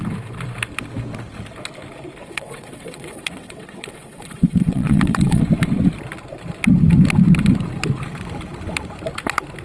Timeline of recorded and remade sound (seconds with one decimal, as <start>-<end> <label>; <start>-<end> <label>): 0.0-2.2 recorded; 2.2-5.4 remade; 5.4-9.6 recorded